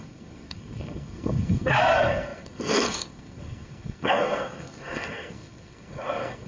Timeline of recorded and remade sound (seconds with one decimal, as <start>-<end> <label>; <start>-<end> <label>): 0.0-6.5 remade